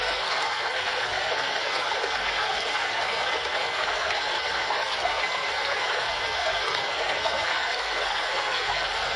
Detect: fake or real fake